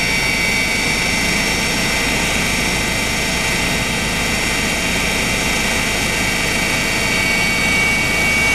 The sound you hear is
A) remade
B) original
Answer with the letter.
B